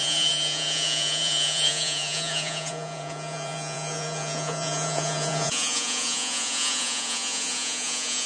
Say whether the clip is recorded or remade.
remade